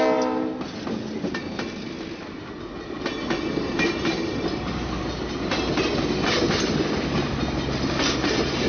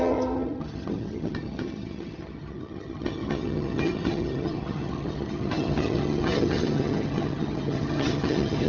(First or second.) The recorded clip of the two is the first